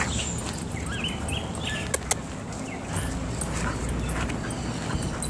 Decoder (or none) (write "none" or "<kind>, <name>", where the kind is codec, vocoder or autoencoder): none